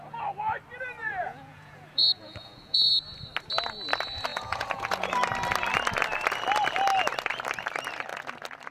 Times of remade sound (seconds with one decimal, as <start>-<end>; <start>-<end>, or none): 1.0-2.9; 4.3-5.1